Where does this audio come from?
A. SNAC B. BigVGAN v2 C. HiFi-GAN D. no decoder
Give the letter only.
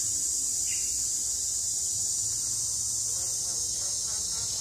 D